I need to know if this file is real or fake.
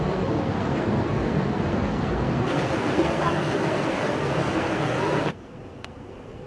fake